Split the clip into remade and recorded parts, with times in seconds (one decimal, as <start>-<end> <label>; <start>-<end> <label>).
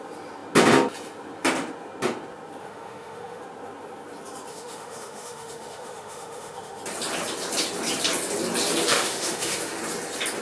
0.0-2.6 recorded; 2.6-3.4 remade; 3.4-4.5 recorded; 4.5-6.8 remade; 6.8-8.9 recorded; 8.9-9.8 remade; 9.8-10.4 recorded